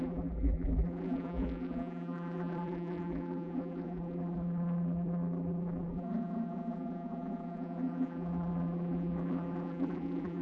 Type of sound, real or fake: fake